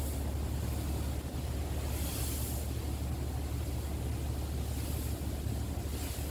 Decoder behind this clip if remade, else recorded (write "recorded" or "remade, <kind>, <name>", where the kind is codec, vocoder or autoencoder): recorded